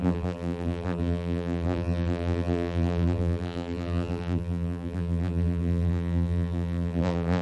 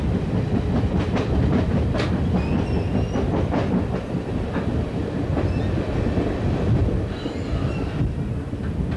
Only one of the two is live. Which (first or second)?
second